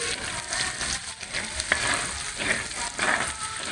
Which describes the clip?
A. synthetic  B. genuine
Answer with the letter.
B